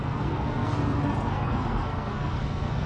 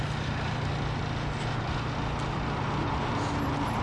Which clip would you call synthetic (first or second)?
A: first